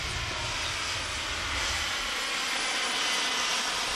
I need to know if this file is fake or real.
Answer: real